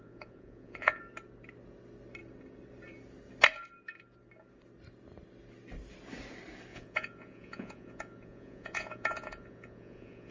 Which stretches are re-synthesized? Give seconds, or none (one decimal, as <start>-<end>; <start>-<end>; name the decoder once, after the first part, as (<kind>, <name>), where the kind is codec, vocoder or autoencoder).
0.0-1.0 (vocoder, Vocos); 6.7-10.3